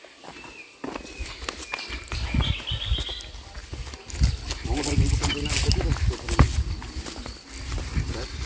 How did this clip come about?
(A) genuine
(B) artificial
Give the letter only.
A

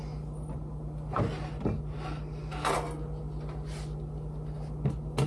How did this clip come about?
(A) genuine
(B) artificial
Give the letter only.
A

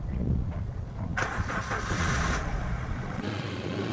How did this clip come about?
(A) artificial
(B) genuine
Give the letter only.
A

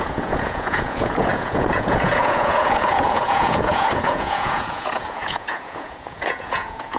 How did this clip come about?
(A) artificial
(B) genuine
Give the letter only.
A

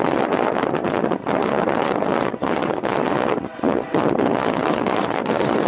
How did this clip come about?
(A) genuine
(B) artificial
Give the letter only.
B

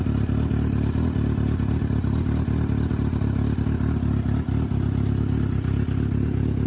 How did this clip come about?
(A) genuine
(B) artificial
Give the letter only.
A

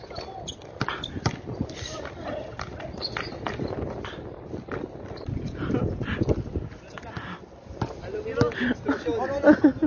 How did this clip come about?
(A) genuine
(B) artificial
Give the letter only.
A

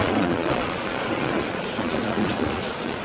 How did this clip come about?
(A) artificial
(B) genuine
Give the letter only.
A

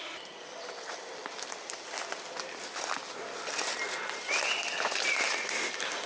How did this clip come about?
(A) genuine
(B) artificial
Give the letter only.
A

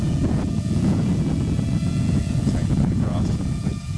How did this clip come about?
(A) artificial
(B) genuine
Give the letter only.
A